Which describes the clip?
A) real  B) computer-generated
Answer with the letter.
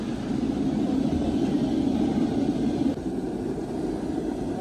B